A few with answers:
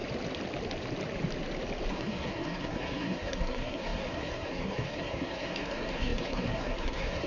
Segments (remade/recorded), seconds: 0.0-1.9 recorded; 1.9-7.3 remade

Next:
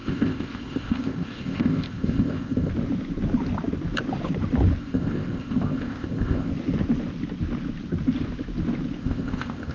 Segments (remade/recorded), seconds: 0.0-2.7 remade; 2.7-4.8 recorded; 4.8-6.5 remade; 6.5-9.0 recorded; 9.0-9.7 remade